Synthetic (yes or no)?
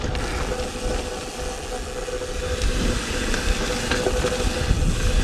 no